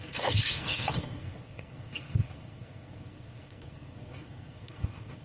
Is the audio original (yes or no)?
no